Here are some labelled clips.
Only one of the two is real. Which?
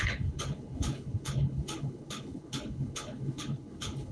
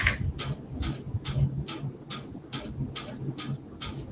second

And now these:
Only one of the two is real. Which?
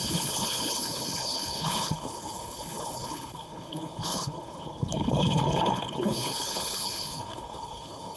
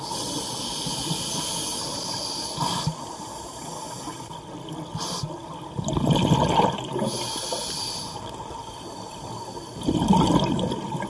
second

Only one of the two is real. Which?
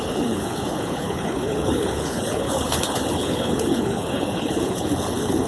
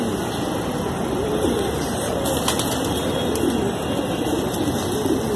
second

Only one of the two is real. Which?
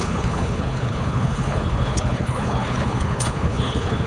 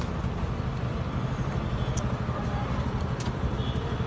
second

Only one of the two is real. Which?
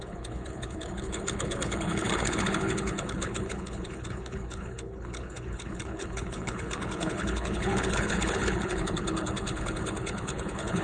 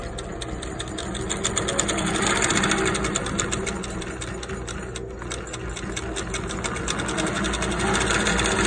second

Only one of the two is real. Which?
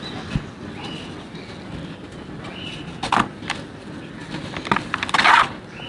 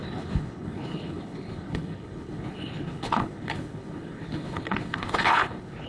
first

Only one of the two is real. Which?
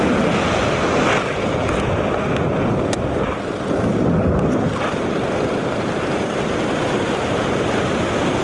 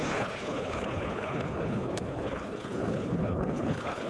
first